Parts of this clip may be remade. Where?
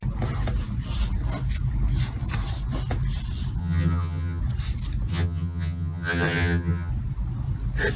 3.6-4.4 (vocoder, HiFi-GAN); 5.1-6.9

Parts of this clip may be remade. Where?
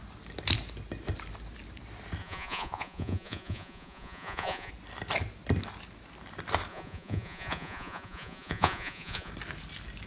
2.2-4.7 (vocoder, Vocos); 6.7-9.3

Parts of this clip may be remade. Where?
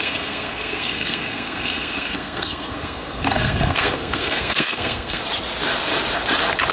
0.0-5.2 (codec, SNAC)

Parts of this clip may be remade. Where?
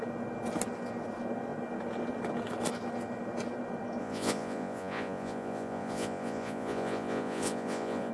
4.0-8.1 (vocoder, Vocos)